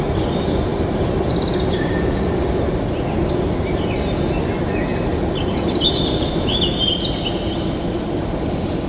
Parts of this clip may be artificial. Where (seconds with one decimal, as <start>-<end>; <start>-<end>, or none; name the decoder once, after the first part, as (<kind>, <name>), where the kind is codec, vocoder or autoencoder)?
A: none